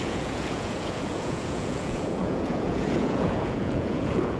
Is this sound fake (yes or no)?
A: yes